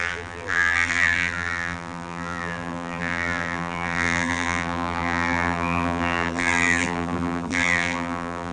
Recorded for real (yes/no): no